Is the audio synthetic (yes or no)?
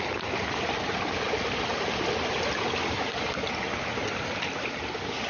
no